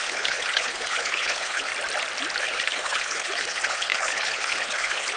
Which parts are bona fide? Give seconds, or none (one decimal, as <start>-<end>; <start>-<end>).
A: 1.7-2.4